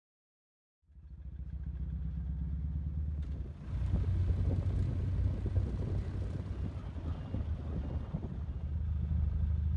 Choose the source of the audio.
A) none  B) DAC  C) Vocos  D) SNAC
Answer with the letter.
A